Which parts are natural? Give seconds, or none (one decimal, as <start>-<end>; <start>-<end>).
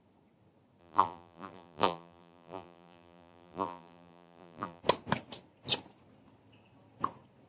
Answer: 0.0-0.8; 4.8-7.5